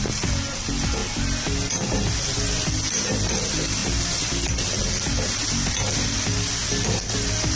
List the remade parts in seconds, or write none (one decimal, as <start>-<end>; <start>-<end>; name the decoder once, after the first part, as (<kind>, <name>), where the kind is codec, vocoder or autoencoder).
none